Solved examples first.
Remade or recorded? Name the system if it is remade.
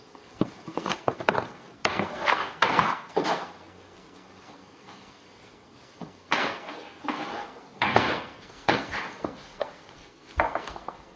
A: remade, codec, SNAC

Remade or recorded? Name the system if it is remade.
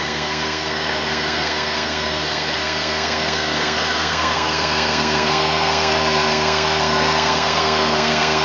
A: remade, codec, SNAC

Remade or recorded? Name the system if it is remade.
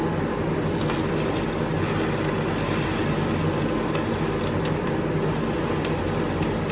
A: recorded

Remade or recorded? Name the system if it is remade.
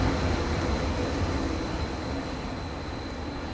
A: recorded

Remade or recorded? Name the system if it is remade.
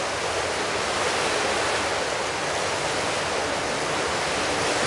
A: recorded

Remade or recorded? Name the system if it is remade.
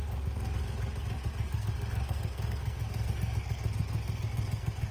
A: remade, codec, SNAC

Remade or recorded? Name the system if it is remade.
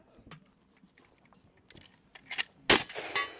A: recorded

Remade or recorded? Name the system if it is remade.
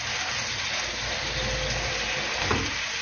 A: recorded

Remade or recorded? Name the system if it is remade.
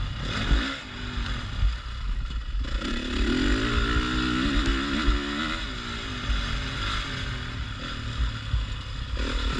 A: recorded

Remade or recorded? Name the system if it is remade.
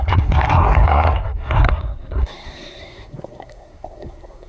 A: remade, codec, SNAC